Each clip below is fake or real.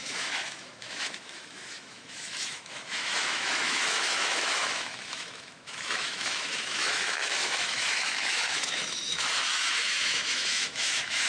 fake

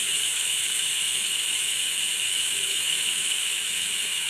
fake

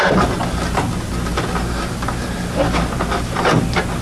real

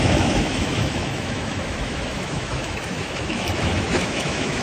fake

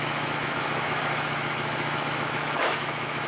fake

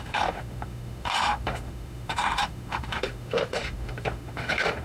fake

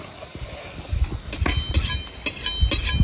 real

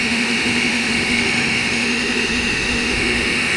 fake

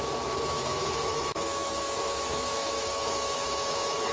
fake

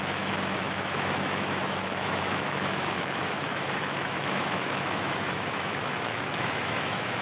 fake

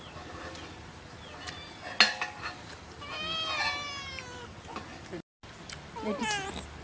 real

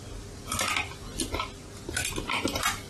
real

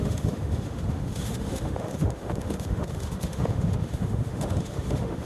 fake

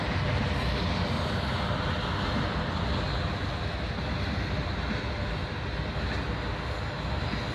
real